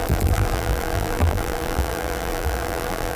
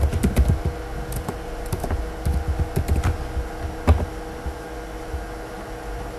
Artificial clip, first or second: first